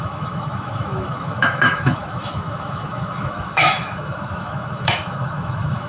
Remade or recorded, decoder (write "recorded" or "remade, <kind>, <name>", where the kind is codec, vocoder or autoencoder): remade, autoencoder, DAC-VAE